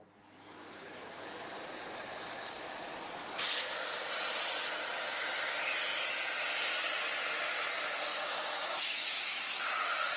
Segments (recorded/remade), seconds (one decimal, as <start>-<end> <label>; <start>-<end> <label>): 0.0-8.1 recorded; 8.1-9.6 remade; 9.6-10.2 recorded